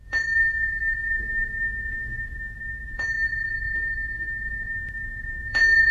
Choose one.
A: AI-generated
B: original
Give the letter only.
A